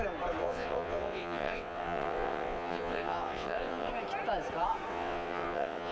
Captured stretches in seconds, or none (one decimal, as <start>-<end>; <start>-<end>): 0.0-0.4; 3.9-4.9

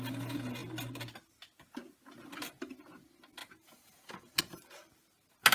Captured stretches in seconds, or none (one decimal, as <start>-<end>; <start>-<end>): 0.0-3.4; 4.4-5.5

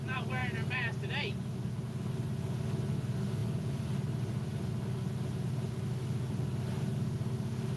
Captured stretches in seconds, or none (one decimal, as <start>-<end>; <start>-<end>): 0.0-3.4; 4.6-7.8

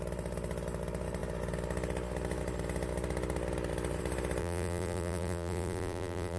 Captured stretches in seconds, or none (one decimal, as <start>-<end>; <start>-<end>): 0.0-4.4

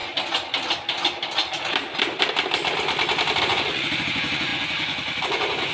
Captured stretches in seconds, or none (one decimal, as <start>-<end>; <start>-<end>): 0.0-3.4

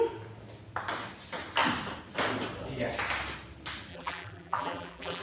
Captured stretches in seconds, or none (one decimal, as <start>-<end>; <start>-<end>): 0.0-3.9

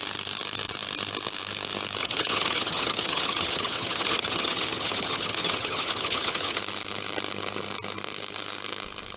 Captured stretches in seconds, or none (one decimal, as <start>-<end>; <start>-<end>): 0.0-2.0; 6.6-9.2